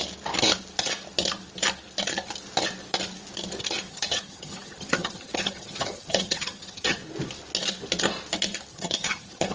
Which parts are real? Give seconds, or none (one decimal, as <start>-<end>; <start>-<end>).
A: 0.0-3.9; 7.0-8.7

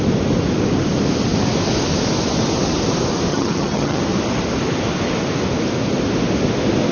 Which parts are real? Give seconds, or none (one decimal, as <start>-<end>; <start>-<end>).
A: 0.0-3.3; 4.0-6.9

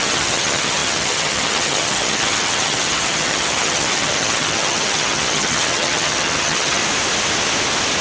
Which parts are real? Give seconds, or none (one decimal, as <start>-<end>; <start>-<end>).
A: 6.8-8.0

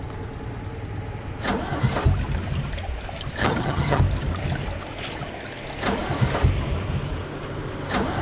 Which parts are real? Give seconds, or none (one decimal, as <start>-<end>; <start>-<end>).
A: 0.0-3.4; 4.0-8.2

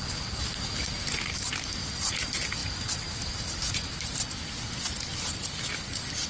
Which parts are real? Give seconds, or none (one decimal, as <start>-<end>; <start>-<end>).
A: 0.0-6.3